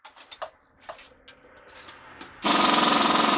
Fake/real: real